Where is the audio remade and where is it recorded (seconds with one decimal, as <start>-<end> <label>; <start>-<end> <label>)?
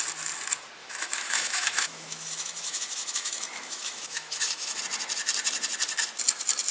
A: 0.0-0.8 recorded; 0.8-4.8 remade; 4.8-6.7 recorded